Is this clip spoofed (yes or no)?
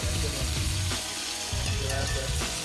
yes